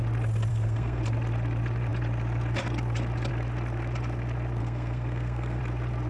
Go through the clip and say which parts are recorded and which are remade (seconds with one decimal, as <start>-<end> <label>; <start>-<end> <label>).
0.0-0.5 recorded; 0.5-1.0 remade; 1.0-4.6 recorded; 4.6-5.6 remade; 5.6-6.1 recorded